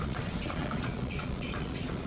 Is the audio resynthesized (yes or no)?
yes